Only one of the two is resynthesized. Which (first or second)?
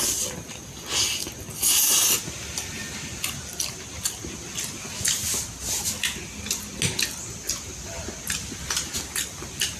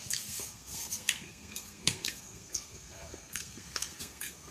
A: second